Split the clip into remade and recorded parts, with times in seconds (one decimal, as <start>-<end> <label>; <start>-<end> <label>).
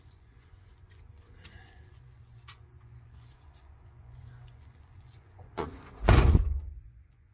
0.0-7.3 remade